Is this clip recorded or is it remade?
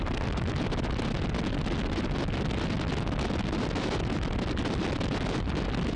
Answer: recorded